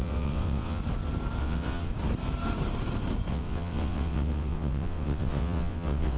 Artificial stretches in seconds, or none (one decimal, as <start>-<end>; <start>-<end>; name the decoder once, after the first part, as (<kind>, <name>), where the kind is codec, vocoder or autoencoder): 0.0-0.8 (vocoder, WaveNeXt); 1.4-1.9; 3.3-6.2